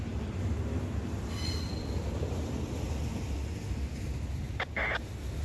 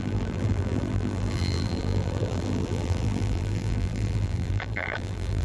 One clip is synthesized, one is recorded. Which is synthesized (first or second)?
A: second